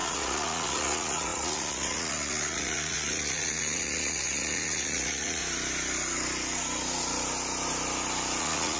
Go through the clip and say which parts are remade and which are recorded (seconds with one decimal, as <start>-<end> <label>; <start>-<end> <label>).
0.0-5.4 remade; 5.4-8.4 recorded; 8.4-8.8 remade